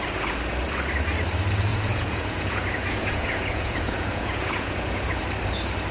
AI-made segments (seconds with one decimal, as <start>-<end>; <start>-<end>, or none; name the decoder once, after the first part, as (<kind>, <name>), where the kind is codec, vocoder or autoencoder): 1.7-5.2 (vocoder, Vocos)